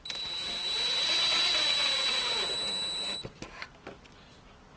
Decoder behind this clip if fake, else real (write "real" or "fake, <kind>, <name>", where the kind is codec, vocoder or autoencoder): real